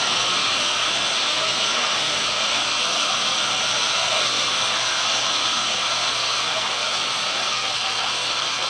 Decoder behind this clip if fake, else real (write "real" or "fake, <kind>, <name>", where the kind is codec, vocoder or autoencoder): fake, codec, SNAC